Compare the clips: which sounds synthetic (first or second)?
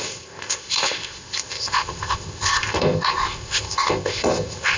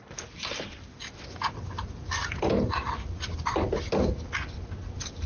first